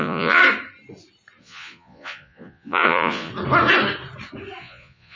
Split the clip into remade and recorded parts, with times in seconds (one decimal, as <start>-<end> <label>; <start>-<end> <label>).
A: 0.0-0.4 remade; 0.4-1.4 recorded; 1.4-3.3 remade; 3.3-4.6 recorded; 4.6-5.2 remade